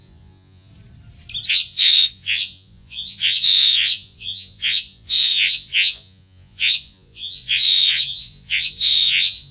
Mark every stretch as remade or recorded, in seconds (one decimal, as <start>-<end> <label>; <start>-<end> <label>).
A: 0.0-0.7 remade; 0.7-1.5 recorded; 1.5-9.5 remade